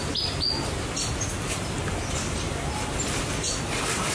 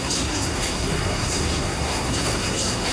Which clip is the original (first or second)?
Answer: first